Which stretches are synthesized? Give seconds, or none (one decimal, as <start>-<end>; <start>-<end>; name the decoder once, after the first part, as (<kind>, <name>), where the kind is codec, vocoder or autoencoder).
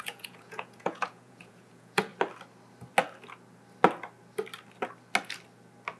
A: 0.0-2.1 (vocoder, Vocos)